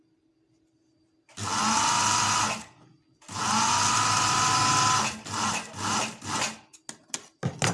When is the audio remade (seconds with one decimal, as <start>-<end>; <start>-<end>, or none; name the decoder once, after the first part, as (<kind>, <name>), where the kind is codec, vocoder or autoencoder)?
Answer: none